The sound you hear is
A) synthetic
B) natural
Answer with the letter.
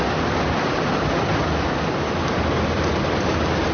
B